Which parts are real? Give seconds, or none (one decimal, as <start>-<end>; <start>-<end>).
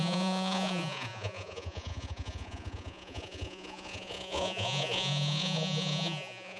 none